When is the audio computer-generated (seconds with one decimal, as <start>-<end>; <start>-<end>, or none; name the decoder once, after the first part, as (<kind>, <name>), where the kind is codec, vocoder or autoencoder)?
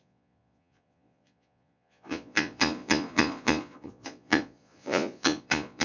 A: 0.0-5.8 (vocoder, Vocos)